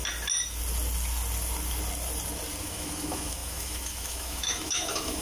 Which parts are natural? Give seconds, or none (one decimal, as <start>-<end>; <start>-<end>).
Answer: 0.0-2.6